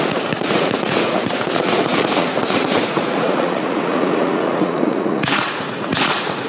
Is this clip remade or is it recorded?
remade